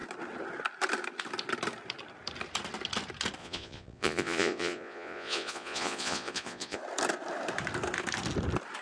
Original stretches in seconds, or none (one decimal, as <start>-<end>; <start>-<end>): 0.0-3.4; 6.8-8.8